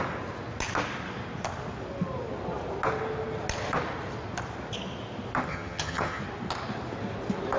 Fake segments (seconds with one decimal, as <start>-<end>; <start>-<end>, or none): 5.5-6.2